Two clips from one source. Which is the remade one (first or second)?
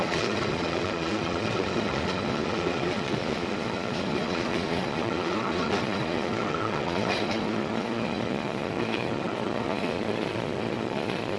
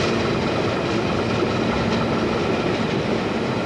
first